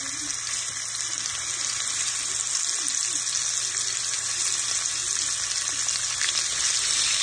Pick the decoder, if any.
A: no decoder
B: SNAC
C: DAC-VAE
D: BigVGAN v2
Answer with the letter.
A